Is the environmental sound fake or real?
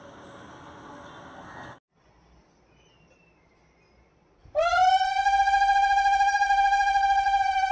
real